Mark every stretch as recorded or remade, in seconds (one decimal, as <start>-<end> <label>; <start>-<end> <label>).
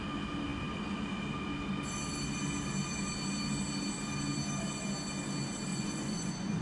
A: 0.0-5.7 recorded; 5.7-6.6 remade